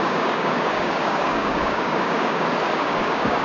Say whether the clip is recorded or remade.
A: remade